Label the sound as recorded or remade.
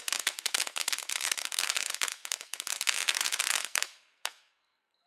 remade